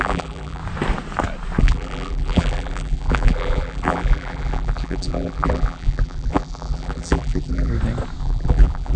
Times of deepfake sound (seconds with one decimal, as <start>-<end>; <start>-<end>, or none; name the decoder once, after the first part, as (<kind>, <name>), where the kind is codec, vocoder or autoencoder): 0.0-0.6 (vocoder, BigVGAN v2); 1.6-7.7; 8.2-9.0